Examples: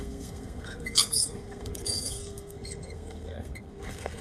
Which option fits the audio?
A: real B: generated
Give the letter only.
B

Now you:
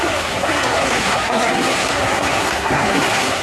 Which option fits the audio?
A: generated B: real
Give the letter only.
A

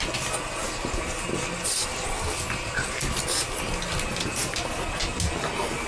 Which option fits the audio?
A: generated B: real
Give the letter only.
B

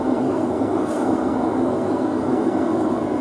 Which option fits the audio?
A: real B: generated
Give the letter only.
B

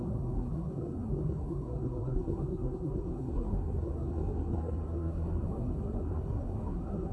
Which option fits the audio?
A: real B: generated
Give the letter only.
B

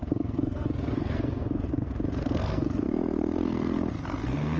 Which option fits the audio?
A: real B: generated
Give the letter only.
B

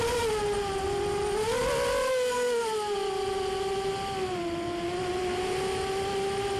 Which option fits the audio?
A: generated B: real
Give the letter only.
B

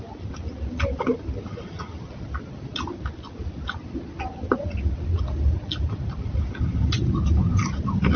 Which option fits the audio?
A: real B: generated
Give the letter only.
A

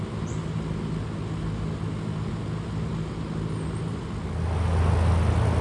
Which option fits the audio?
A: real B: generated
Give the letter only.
A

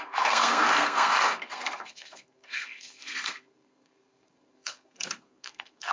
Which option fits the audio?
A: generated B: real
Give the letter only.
A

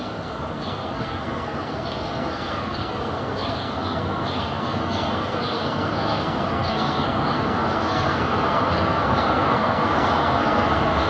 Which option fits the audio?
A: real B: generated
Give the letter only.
B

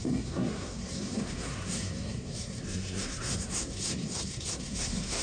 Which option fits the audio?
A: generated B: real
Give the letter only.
A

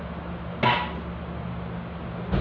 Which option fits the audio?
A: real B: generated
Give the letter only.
A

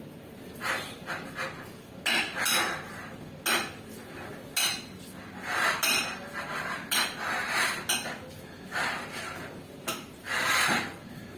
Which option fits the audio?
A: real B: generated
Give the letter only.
A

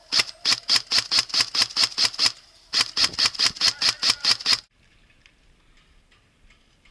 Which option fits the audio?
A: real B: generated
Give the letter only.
A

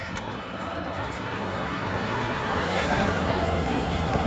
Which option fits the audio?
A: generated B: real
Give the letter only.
A